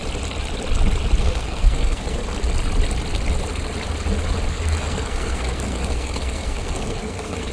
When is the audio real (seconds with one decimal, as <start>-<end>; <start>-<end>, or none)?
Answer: 0.0-1.2; 2.2-4.5